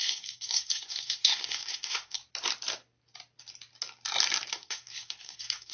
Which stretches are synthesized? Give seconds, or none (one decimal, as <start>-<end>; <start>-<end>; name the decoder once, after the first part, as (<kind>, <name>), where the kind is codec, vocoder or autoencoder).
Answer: 0.0-2.2 (codec, SNAC); 4.5-5.7